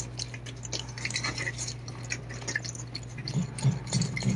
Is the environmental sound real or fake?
real